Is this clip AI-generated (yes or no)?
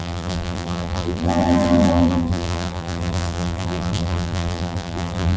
yes